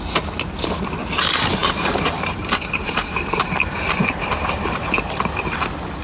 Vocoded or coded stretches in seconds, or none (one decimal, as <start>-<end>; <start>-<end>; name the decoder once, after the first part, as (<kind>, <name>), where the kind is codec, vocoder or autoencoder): 1.6-4.3 (vocoder, BigVGAN v2)